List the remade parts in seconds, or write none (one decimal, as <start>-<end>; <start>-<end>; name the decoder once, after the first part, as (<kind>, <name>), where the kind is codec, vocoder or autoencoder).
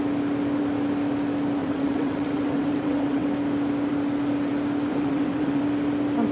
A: 1.6-3.3 (vocoder, WaveNeXt); 4.9-5.6